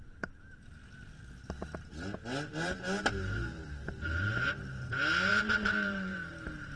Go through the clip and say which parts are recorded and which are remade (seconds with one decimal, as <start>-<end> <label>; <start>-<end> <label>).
0.0-3.4 recorded; 3.4-4.3 remade; 4.3-5.3 recorded; 5.3-6.3 remade; 6.3-6.8 recorded